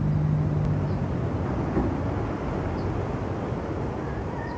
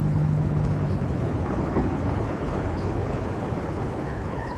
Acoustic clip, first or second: first